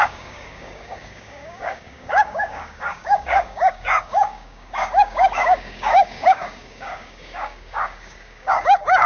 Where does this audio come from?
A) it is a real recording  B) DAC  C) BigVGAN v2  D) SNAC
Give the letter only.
B